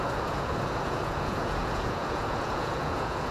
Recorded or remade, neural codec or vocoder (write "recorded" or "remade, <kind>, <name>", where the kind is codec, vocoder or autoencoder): remade, vocoder, Vocos